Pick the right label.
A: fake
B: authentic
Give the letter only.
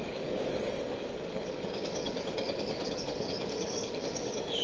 A